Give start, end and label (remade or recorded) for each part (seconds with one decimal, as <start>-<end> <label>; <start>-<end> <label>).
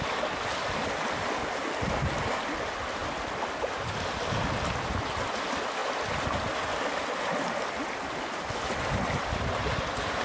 0.0-10.2 recorded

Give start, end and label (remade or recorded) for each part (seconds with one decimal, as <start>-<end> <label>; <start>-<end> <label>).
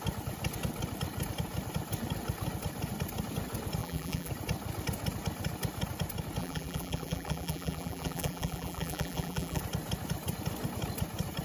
0.0-3.8 recorded; 3.8-4.3 remade; 4.3-6.4 recorded; 6.4-9.6 remade; 9.6-11.4 recorded